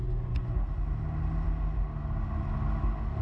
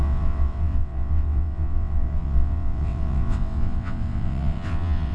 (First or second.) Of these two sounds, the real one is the first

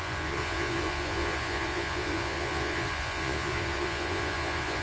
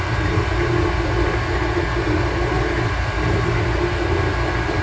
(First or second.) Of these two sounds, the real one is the second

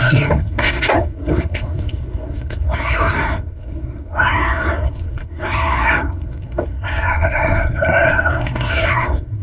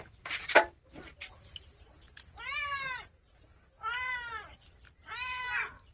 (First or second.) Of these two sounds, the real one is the second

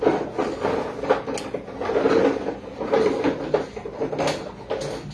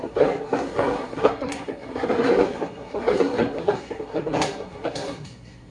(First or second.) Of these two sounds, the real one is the first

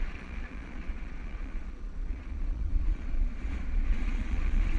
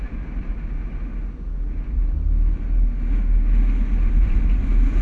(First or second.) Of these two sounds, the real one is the second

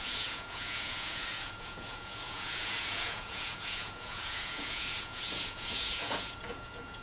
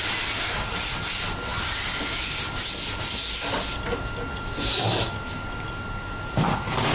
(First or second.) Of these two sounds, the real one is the second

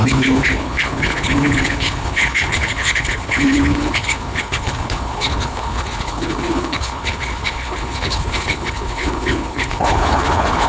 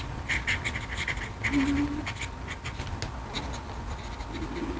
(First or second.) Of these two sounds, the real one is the second